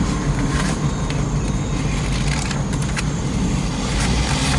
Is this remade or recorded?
recorded